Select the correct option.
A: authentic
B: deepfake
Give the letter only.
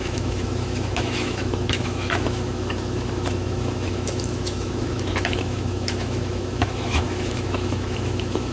B